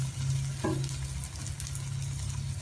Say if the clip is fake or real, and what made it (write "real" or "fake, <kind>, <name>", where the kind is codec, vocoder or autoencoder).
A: real